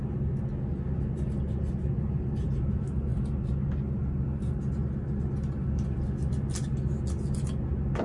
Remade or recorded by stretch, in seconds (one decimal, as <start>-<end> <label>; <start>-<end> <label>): 0.0-8.0 recorded